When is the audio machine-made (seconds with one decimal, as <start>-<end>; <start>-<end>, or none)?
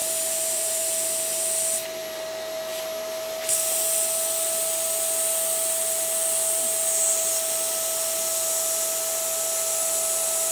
0.0-0.8